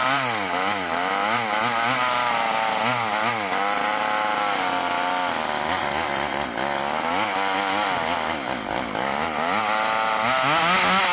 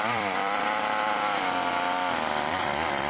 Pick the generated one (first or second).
second